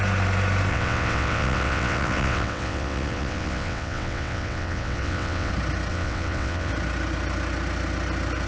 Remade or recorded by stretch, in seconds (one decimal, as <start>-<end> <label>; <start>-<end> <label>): 0.0-0.7 recorded; 0.7-5.5 remade; 5.5-5.9 recorded; 5.9-6.7 remade; 6.7-8.5 recorded